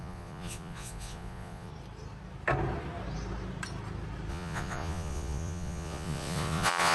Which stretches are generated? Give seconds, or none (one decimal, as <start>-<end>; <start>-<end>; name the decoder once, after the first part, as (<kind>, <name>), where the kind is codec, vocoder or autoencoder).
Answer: 0.0-1.7 (vocoder, Vocos); 4.3-6.9